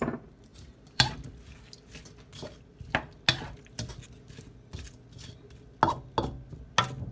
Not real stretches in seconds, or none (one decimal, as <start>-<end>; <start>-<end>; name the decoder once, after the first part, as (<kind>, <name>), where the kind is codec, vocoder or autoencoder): 0.5-1.1 (vocoder, BigVGAN v2)